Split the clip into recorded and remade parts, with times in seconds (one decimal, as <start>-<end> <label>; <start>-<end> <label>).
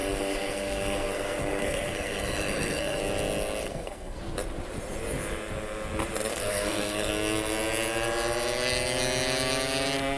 0.0-3.0 remade; 3.0-3.6 recorded; 3.6-4.2 remade; 4.2-6.3 recorded; 6.3-7.1 remade; 7.1-10.2 recorded